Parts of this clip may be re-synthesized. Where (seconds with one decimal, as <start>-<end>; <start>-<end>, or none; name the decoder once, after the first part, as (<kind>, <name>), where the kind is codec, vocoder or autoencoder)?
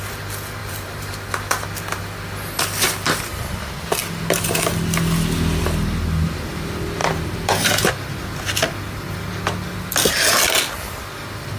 0.6-1.3 (vocoder, BigVGAN v2); 7.0-7.9